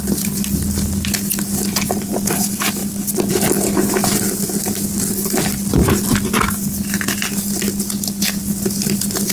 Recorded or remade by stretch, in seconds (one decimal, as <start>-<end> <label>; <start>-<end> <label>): 0.0-9.3 recorded